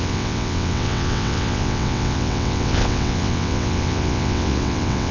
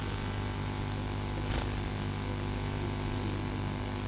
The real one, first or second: second